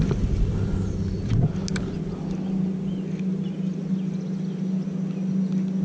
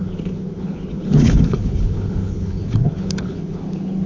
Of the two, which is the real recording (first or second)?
first